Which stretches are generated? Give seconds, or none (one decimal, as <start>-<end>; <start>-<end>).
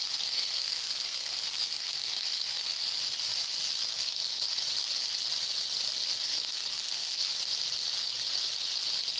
0.0-2.8; 3.7-4.4; 6.2-7.3